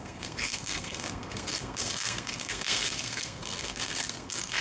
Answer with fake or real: fake